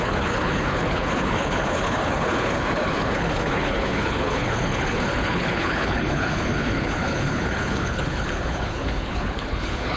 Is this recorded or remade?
remade